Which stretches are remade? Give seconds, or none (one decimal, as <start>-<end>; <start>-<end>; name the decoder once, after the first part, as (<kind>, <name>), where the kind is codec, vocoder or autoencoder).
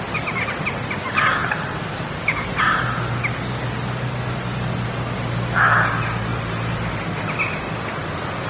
1.4-3.4 (vocoder, BigVGAN v2); 6.3-6.9